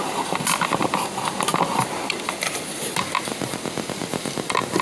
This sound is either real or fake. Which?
real